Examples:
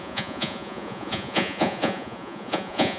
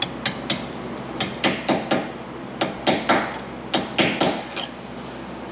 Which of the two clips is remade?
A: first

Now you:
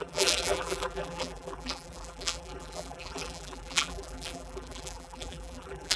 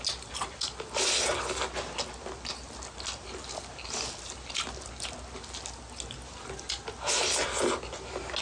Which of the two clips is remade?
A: first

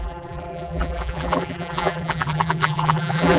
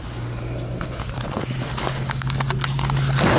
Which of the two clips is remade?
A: first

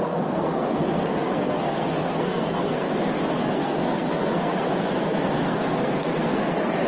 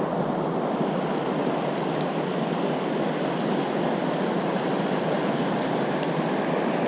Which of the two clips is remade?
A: first